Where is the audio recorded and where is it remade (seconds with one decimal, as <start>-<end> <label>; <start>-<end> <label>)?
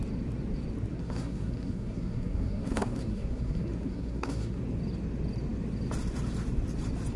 0.0-0.9 recorded; 0.9-4.6 remade; 4.6-7.2 recorded